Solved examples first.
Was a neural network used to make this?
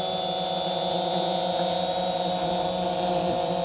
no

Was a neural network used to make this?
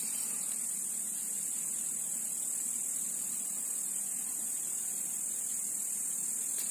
no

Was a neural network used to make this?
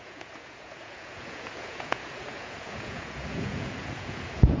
yes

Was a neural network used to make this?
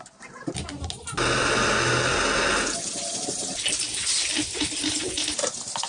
no